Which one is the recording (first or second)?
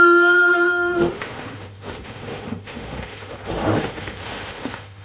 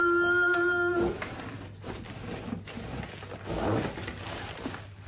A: second